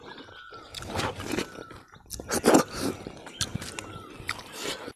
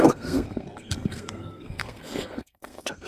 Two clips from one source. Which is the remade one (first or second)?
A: second